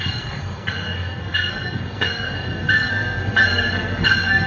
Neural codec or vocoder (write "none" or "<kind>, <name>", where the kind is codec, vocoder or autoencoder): codec, SNAC